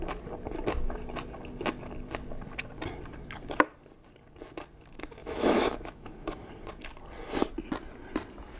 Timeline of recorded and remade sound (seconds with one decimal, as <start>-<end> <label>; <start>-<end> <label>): 0.0-5.2 recorded; 5.2-6.5 remade; 6.5-8.6 recorded